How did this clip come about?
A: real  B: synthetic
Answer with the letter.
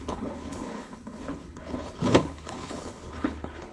B